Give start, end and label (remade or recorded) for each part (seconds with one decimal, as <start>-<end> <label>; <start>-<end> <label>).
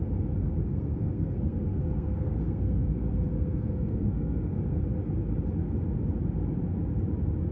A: 0.0-0.4 recorded; 0.4-4.8 remade; 4.8-7.5 recorded